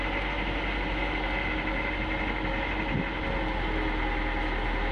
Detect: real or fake real